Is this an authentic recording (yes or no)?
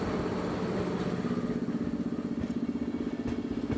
yes